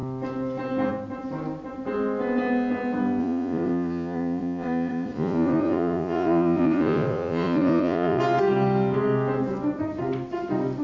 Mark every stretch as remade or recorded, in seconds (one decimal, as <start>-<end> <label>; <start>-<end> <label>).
0.0-3.2 recorded; 3.2-8.2 remade; 8.2-10.8 recorded